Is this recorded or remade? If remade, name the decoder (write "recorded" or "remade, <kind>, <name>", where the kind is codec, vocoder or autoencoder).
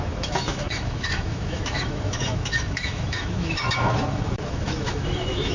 remade, autoencoder, DAC-VAE